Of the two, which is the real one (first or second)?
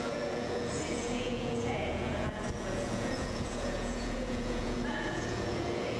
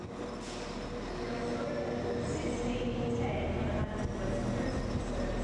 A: second